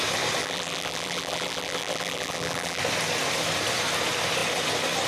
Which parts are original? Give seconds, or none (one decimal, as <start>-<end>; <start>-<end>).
0.0-0.4; 2.8-5.1